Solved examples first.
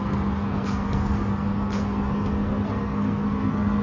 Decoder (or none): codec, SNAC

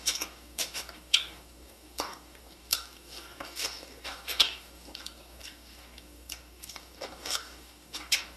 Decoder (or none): codec, DAC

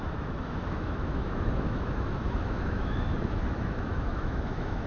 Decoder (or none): autoencoder, DAC-VAE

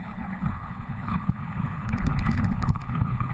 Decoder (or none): codec, HILCodec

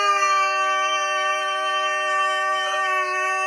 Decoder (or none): none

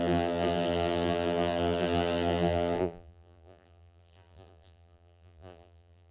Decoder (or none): vocoder, BigVGAN v2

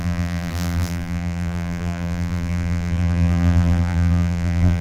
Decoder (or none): vocoder, BigVGAN v2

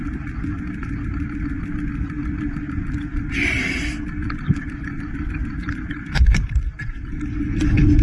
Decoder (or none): none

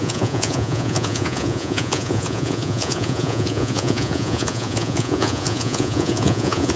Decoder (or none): vocoder, Vocos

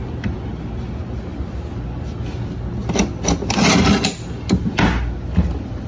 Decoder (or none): none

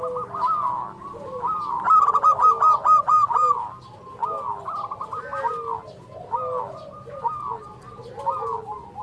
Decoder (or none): none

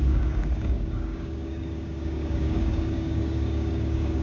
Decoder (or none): codec, DAC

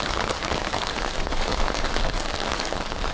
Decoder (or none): codec, DAC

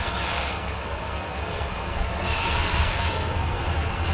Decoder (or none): codec, SNAC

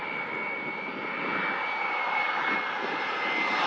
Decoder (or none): none